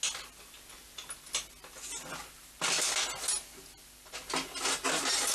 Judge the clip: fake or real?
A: real